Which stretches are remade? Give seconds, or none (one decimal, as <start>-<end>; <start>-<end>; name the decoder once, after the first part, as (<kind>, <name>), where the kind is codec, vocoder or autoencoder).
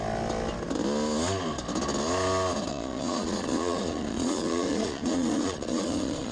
2.7-6.3 (vocoder, Vocos)